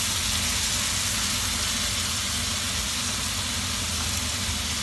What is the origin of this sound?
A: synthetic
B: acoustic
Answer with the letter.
B